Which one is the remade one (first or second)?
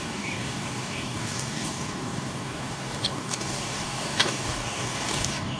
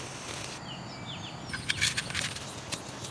first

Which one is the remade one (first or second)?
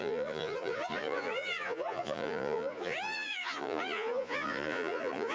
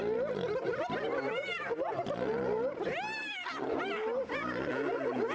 first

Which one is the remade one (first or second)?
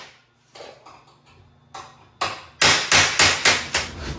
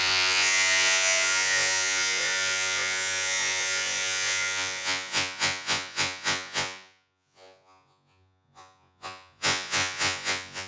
second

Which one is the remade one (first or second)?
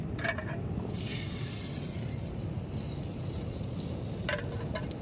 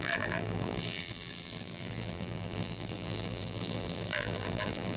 second